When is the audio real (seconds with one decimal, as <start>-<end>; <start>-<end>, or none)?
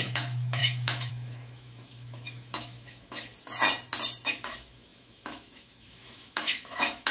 3.3-4.3